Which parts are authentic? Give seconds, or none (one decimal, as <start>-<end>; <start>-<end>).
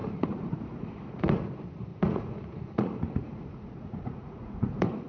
1.4-1.9